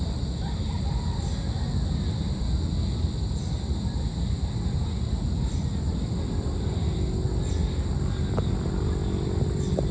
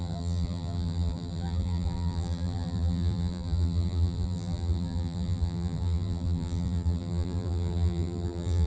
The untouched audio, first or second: first